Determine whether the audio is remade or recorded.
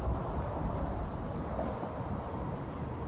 recorded